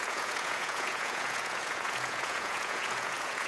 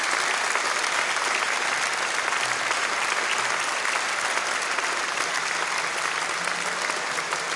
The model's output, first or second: first